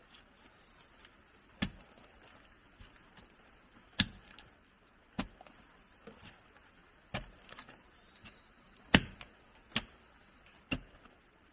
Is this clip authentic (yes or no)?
yes